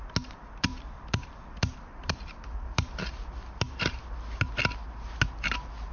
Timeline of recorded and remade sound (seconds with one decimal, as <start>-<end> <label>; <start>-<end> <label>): 0.0-5.9 recorded